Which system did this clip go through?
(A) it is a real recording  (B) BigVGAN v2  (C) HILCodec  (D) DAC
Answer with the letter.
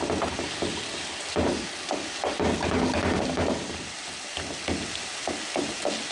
A